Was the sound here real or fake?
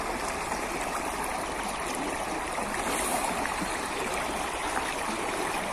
real